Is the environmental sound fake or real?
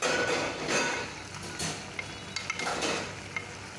real